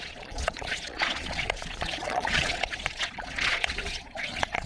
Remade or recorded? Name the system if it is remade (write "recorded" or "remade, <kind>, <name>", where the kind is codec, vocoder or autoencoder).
remade, vocoder, Vocos